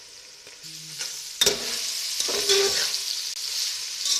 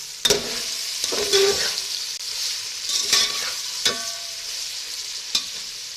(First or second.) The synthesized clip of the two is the second